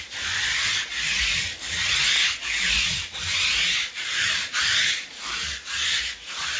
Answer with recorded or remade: recorded